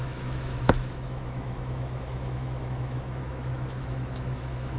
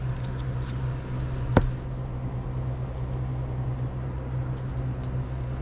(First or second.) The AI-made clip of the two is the first